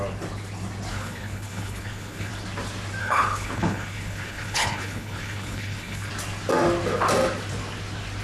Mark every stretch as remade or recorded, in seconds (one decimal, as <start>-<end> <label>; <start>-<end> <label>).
0.0-0.9 recorded; 0.9-2.3 remade; 2.3-3.0 recorded; 3.0-6.1 remade; 6.1-8.2 recorded